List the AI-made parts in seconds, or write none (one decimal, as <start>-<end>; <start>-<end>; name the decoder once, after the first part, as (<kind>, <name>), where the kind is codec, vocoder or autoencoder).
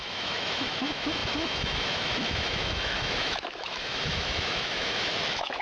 0.0-5.6 (autoencoder, DAC-VAE)